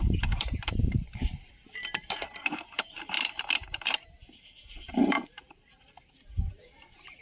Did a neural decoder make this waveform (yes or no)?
yes